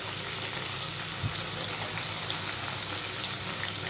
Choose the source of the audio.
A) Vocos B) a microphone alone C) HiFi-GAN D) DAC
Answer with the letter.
B